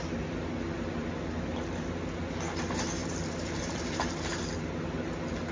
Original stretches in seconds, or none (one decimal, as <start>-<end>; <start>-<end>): 0.0-3.0; 4.0-5.5